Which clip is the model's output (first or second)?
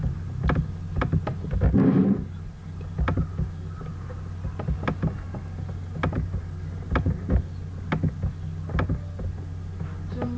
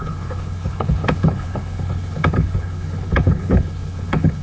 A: second